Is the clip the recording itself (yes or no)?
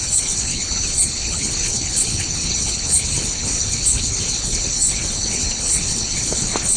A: no